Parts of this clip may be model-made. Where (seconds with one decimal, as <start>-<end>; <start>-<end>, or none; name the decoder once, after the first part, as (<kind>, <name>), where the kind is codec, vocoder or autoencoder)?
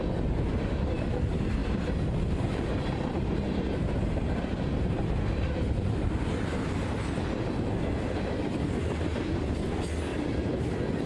1.6-5.3 (vocoder, BigVGAN v2); 10.1-10.7